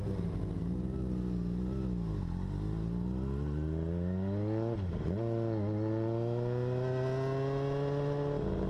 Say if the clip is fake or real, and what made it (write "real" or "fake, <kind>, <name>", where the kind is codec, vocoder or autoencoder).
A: real